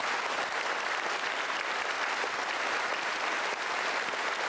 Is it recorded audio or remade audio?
recorded